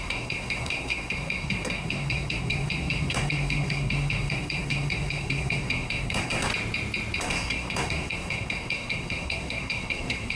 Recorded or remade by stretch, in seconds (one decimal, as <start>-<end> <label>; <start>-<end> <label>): 0.0-6.5 remade; 6.5-7.2 recorded; 7.2-10.4 remade